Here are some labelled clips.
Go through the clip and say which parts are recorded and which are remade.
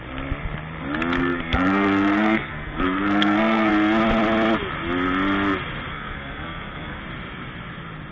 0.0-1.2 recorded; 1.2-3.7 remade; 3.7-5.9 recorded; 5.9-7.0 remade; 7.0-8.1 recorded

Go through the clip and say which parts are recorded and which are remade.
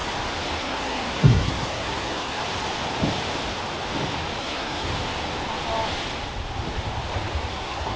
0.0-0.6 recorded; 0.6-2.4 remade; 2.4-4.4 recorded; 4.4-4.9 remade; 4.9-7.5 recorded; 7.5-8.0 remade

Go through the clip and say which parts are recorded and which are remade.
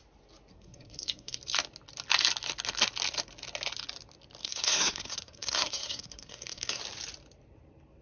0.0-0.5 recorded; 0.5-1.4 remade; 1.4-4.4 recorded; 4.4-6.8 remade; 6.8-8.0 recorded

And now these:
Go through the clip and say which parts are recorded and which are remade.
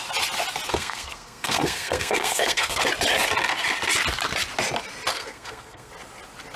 0.0-0.7 recorded; 0.7-2.8 remade; 2.8-5.1 recorded; 5.1-5.9 remade; 5.9-6.6 recorded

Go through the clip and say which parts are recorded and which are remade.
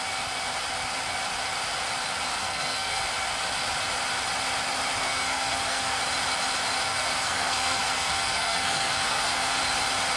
0.0-2.4 recorded; 2.4-3.0 remade; 3.0-5.0 recorded; 5.0-6.0 remade; 6.0-6.9 recorded; 6.9-9.6 remade; 9.6-10.2 recorded